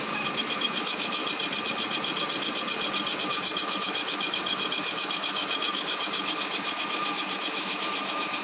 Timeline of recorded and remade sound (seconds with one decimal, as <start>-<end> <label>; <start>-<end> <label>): 0.0-1.2 remade; 1.2-3.2 recorded; 3.2-8.4 remade